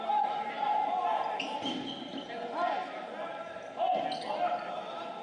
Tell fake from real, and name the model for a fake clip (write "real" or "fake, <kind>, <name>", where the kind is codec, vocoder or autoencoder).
real